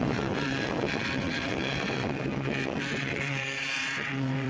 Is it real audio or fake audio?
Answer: fake